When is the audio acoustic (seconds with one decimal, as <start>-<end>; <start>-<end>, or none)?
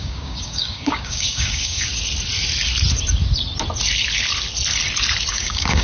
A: 1.9-5.3